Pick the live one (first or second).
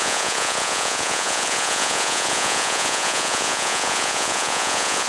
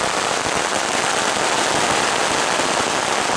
second